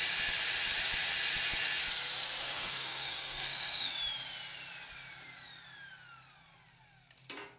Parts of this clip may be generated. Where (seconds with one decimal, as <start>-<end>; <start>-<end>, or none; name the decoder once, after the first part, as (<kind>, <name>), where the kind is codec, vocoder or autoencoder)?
2.4-3.9 (codec, SNAC)

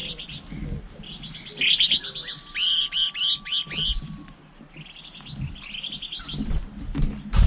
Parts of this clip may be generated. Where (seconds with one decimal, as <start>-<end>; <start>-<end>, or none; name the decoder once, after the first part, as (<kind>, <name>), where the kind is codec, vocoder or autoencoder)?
none

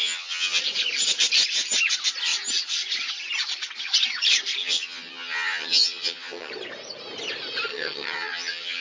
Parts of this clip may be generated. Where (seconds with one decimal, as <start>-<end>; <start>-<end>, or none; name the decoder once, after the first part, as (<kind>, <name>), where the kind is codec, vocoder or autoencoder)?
0.0-0.6 (vocoder, HiFi-GAN); 4.6-6.5; 7.7-8.8

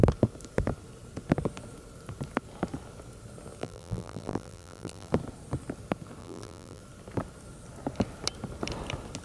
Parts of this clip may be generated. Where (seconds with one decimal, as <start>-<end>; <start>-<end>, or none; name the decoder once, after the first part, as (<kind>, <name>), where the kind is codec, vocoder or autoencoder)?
3.6-5.1 (vocoder, BigVGAN v2); 6.2-6.8

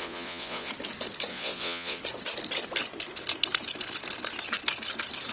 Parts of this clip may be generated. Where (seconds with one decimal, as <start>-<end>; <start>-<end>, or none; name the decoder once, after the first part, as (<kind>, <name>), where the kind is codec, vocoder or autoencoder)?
0.0-0.7 (vocoder, Vocos); 1.3-2.0

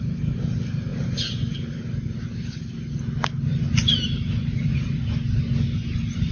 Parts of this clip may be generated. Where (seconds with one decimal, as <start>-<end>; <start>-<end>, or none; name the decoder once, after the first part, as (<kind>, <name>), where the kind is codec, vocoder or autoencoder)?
none